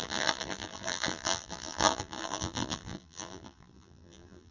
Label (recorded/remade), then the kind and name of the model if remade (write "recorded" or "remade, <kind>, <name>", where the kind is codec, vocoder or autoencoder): remade, vocoder, BigVGAN v2